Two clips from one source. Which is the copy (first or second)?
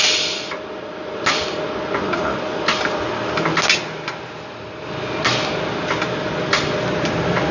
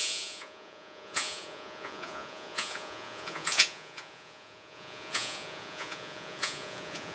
second